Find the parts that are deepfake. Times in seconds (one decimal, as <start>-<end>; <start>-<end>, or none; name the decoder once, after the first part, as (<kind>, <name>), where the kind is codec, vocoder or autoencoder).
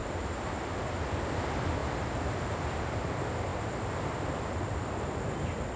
0.0-0.6 (vocoder, BigVGAN v2); 1.8-2.9